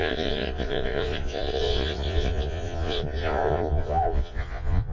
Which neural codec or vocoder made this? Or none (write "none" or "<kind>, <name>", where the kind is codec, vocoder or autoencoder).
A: vocoder, Vocos